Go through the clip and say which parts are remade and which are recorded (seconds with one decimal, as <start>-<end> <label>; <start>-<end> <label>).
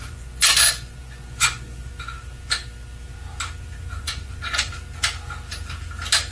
0.0-1.9 remade; 1.9-3.9 recorded; 3.9-4.7 remade; 4.7-6.3 recorded